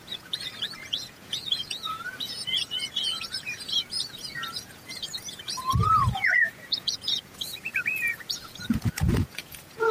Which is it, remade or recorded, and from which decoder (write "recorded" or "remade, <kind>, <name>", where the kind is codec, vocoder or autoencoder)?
remade, vocoder, Vocos